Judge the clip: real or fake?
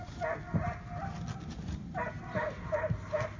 real